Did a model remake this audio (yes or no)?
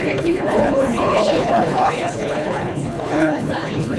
yes